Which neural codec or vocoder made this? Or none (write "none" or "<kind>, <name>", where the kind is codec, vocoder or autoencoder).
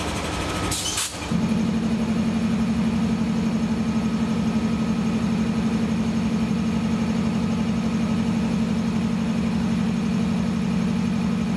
none